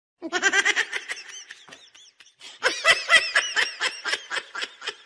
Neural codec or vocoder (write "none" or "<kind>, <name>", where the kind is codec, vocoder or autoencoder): none